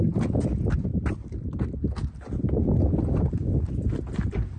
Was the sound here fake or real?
real